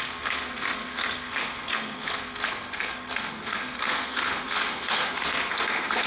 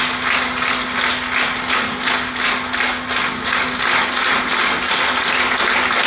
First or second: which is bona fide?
second